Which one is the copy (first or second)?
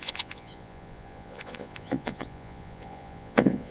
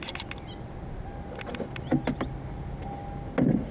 first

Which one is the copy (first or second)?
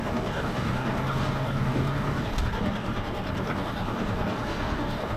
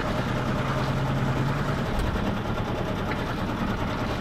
first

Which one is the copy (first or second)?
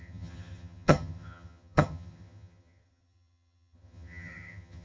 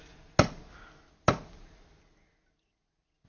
first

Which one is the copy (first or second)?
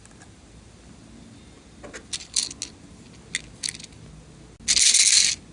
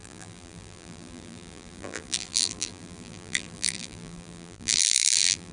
second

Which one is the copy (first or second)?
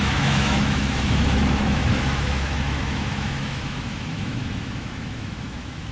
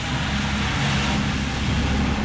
first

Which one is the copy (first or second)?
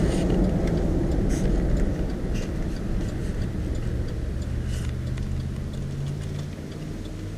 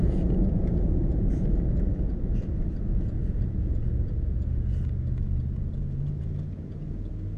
second